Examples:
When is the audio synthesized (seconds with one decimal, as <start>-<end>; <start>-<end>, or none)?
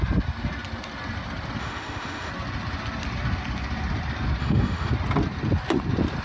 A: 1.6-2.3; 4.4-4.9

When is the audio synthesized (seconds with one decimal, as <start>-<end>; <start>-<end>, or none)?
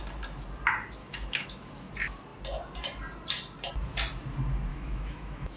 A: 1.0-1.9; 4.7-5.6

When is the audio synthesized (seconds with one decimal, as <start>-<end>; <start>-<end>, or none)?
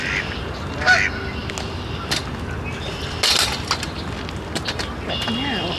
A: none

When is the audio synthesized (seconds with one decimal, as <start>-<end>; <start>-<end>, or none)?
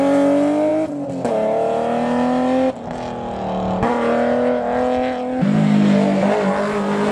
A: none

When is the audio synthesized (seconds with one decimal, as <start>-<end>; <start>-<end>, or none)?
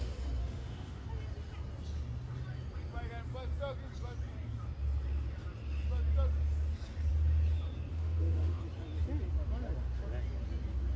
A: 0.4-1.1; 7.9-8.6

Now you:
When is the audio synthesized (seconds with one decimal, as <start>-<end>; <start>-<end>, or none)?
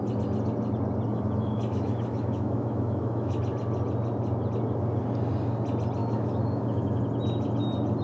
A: 1.1-3.4; 6.0-7.0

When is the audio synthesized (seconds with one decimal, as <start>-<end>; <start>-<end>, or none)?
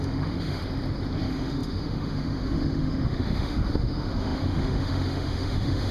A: 0.0-0.6; 1.2-5.9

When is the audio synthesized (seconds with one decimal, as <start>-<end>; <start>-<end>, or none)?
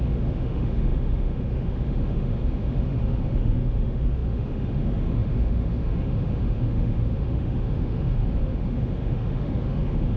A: 0.0-10.2